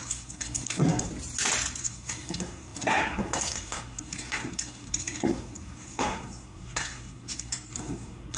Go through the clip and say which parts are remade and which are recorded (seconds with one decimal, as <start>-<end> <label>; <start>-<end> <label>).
0.0-1.1 remade; 1.1-1.8 recorded; 1.8-8.4 remade